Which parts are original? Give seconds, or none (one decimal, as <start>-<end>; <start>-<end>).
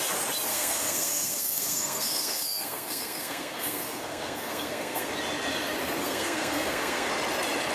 0.0-0.5; 5.1-6.0; 7.1-7.7